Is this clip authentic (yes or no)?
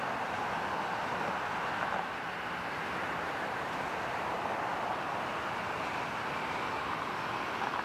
yes